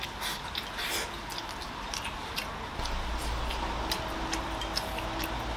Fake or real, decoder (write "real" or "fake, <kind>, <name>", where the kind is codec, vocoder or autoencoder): real